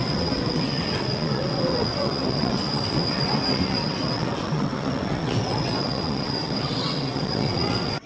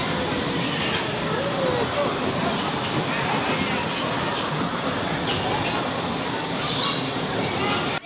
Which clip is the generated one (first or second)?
first